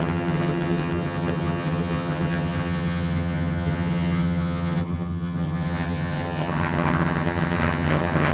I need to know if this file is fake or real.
fake